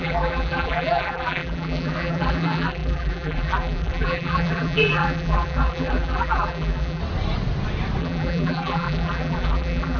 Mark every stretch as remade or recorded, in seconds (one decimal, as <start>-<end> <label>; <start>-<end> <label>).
0.0-7.0 remade; 7.0-8.0 recorded; 8.0-10.0 remade